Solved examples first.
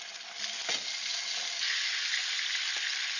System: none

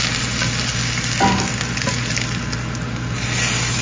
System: none